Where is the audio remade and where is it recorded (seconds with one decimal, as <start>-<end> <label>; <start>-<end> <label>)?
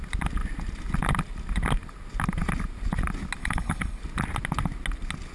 0.0-3.4 recorded; 3.4-4.0 remade; 4.0-5.3 recorded